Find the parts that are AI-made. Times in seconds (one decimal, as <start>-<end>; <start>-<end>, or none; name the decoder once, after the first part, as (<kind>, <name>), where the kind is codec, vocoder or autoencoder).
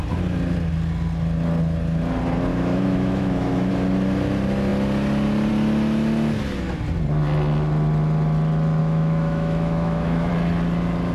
2.5-3.7 (autoencoder, DAC-VAE); 8.8-10.3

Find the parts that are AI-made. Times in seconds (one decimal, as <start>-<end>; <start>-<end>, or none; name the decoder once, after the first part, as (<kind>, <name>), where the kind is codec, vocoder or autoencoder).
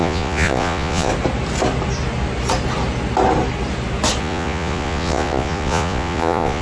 0.0-1.1 (vocoder, Vocos); 4.2-6.6